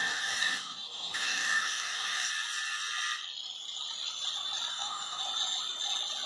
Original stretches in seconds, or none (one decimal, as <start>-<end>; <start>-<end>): 2.3-4.7; 5.2-6.3